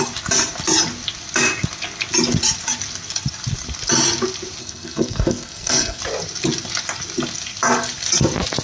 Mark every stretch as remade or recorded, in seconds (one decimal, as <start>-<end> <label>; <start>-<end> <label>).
0.0-4.6 recorded; 4.6-6.0 remade; 6.0-8.6 recorded